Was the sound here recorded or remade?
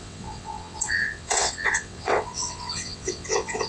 remade